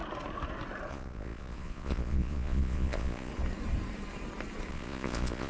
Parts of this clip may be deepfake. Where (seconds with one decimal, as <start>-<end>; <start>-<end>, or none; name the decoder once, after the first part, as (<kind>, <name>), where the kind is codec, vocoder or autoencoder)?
0.9-3.3 (vocoder, Vocos); 4.7-5.5